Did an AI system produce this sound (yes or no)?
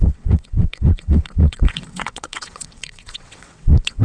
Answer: yes